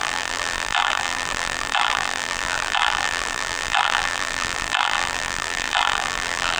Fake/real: fake